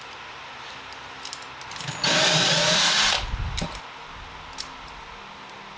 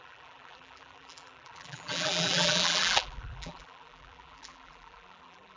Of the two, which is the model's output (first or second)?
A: second